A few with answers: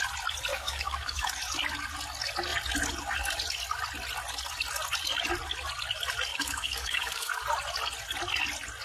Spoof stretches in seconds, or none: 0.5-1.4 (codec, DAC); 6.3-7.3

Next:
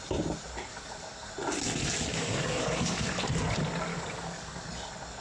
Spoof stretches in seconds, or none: 0.7-1.3 (codec, DAC); 2.1-3.2; 3.9-4.7

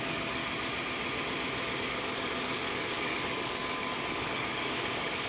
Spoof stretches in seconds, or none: 0.0-0.4 (codec, DAC); 1.8-5.3

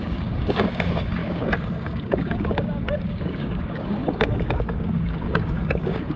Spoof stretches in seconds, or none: 0.0-6.2 (codec, DAC)

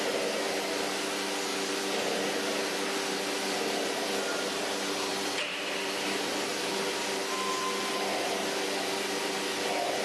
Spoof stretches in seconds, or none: none